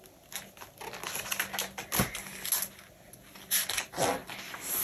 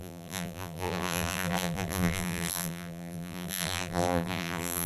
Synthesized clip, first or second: second